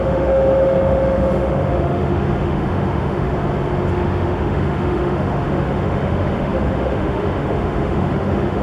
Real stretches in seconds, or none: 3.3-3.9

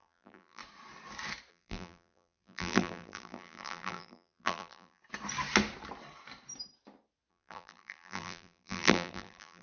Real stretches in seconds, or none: 0.6-1.5; 5.0-7.3

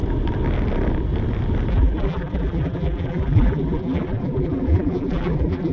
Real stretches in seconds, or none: 0.0-1.7

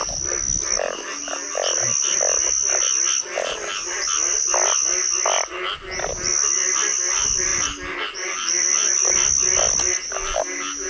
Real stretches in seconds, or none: 0.0-7.5; 9.1-10.9